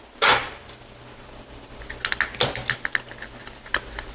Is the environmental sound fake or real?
real